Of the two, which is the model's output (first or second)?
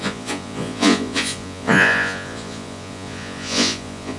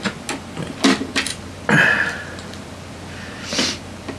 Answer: first